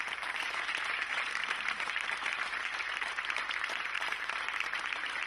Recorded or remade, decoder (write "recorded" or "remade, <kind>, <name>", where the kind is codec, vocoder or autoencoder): remade, vocoder, BigVGAN v2